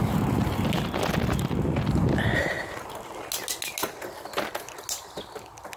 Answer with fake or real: real